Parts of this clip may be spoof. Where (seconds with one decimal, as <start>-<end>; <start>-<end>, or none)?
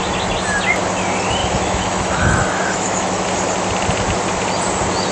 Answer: 1.4-3.3